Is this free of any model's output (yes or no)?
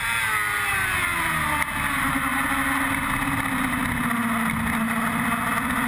yes